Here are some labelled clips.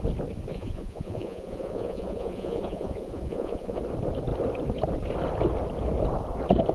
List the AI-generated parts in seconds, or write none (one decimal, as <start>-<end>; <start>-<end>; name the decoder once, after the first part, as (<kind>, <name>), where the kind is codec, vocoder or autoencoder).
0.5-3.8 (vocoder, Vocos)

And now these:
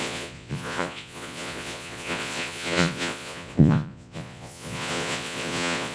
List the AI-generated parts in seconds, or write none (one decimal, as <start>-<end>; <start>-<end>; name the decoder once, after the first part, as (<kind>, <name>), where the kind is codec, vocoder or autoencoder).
0.0-5.9 (vocoder, Vocos)

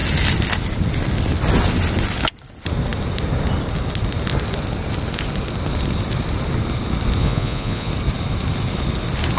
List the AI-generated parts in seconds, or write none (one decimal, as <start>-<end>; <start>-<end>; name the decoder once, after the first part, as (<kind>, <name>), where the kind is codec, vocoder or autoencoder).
7.2-7.9 (vocoder, Vocos)

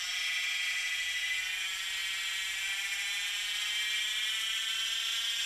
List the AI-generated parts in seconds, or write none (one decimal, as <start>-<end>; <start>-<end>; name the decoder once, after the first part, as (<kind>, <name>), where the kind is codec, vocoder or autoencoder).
none

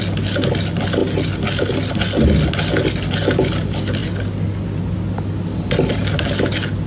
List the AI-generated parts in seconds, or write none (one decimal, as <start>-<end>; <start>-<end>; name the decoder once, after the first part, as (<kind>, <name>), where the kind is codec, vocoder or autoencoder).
none

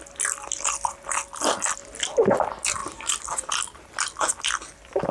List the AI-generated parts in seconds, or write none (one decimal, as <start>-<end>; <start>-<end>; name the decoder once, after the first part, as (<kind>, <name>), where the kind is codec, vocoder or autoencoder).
none

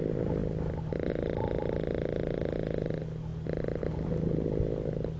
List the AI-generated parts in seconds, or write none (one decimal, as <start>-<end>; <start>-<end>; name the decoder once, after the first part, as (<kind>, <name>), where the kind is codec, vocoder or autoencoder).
none

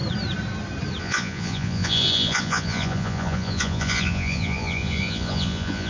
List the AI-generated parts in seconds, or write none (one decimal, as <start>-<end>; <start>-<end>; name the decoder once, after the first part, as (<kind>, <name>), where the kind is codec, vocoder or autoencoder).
1.0-5.9 (vocoder, Vocos)